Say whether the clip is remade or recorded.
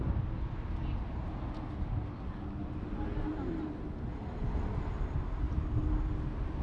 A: recorded